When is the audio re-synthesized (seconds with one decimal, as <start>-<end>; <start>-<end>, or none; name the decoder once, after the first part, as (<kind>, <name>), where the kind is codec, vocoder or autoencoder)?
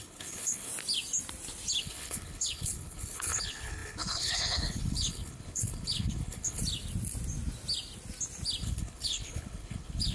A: 0.0-0.7 (codec, HILCodec); 1.8-6.6; 8.6-10.1